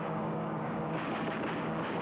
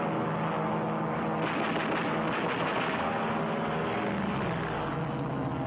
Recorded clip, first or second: second